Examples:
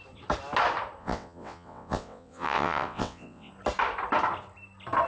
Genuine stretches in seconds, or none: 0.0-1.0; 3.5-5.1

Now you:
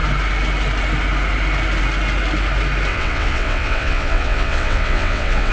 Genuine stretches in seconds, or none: 0.0-2.9

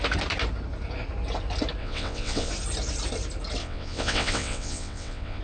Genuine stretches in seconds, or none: 0.0-1.8; 2.5-3.6